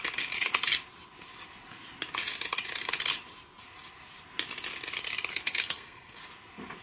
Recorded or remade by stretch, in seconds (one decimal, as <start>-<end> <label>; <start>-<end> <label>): 0.0-5.3 recorded; 5.3-6.2 remade; 6.2-6.8 recorded